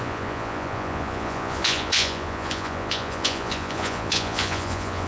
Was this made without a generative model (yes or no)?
no